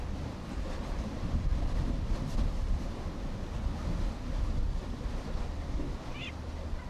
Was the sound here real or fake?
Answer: real